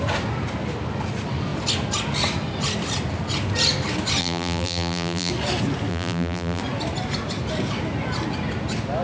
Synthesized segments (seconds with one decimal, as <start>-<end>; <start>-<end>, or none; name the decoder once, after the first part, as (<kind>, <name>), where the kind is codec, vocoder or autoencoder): 4.2-5.3 (vocoder, BigVGAN v2); 5.9-6.6